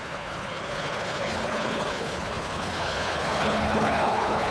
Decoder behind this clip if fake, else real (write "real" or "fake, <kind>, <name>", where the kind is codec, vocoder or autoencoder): fake, codec, HILCodec